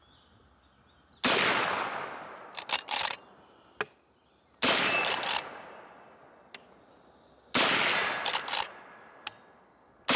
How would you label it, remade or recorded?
recorded